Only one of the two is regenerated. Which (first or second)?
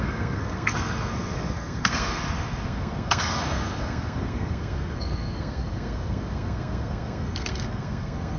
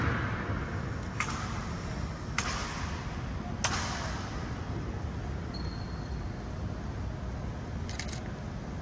first